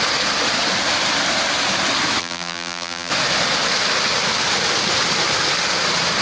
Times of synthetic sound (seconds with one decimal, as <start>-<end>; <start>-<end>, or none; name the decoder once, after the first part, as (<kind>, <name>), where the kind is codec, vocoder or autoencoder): 2.2-3.1 (vocoder, BigVGAN v2)